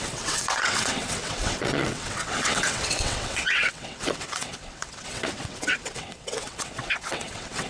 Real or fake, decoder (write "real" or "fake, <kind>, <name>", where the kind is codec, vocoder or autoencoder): fake, vocoder, WaveNeXt